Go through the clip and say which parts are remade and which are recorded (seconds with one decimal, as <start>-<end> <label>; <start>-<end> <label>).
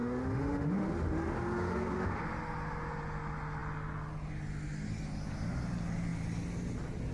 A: 0.0-2.2 remade; 2.2-7.1 recorded